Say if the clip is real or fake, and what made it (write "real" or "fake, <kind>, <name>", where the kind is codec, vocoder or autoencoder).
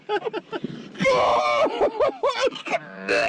real